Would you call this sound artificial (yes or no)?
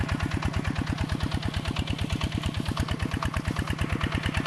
no